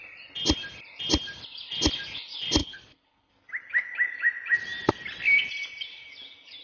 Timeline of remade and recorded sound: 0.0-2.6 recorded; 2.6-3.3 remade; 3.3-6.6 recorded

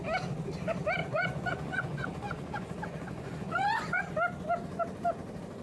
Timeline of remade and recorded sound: 0.0-1.0 recorded; 1.0-4.0 remade; 4.0-5.6 recorded

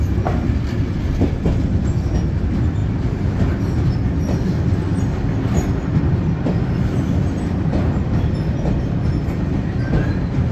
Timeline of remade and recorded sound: 0.0-10.5 recorded